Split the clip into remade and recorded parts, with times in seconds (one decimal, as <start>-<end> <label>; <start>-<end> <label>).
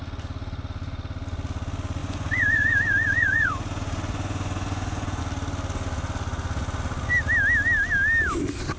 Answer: 0.0-2.0 recorded; 2.0-5.2 remade; 5.2-8.8 recorded